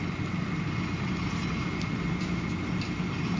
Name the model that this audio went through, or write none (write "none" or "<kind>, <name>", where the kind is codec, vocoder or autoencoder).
none